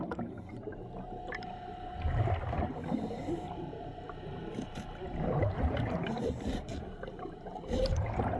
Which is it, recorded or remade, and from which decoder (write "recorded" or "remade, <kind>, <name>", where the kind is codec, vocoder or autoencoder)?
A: remade, vocoder, BigVGAN v2